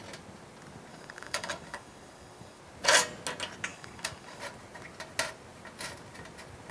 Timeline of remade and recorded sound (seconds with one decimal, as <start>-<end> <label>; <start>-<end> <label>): 0.0-0.9 recorded; 0.9-2.6 remade; 2.6-3.7 recorded; 3.7-4.4 remade; 4.4-6.7 recorded

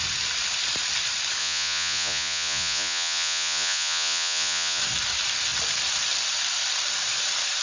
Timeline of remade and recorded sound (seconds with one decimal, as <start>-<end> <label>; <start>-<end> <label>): 0.0-1.4 recorded; 1.4-4.8 remade; 4.8-7.6 recorded

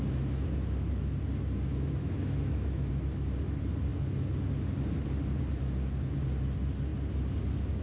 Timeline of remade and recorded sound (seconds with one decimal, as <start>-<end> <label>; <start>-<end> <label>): 0.0-1.7 recorded; 1.7-2.9 remade; 2.9-7.8 recorded

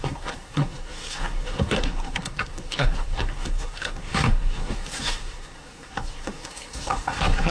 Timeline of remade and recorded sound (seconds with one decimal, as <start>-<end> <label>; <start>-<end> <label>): 0.0-7.5 remade

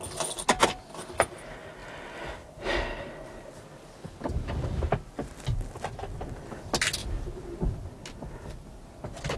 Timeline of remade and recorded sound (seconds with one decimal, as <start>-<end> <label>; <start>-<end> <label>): 0.0-9.4 recorded

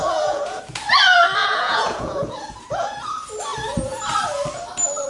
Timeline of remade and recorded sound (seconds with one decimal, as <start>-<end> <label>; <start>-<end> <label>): 0.0-0.6 remade; 0.6-1.4 recorded; 1.4-3.0 remade; 3.0-5.1 recorded